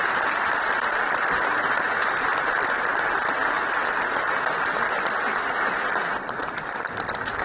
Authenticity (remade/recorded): recorded